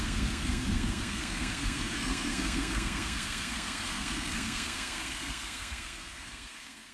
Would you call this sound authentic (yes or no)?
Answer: no